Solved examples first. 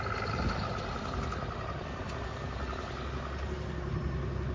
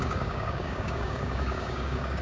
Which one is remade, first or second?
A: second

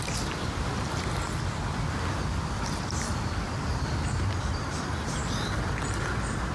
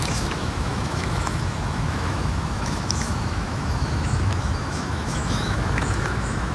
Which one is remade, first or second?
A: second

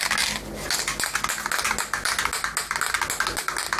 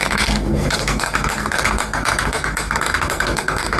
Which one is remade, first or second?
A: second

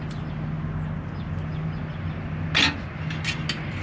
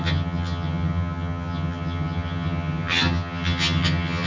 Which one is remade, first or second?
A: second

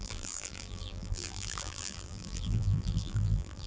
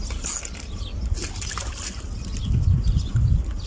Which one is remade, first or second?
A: first